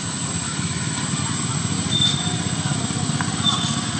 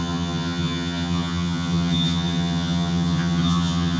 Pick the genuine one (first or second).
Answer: first